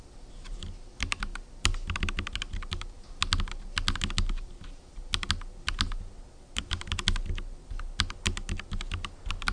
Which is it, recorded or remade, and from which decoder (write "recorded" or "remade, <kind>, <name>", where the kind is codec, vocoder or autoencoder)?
recorded